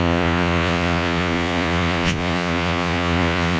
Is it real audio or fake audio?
fake